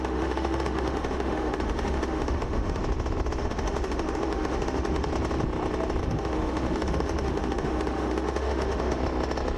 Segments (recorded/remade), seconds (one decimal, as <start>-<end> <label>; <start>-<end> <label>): 0.0-2.8 remade; 2.8-3.4 recorded; 3.4-5.1 remade; 5.1-6.0 recorded; 6.0-9.0 remade; 9.0-9.6 recorded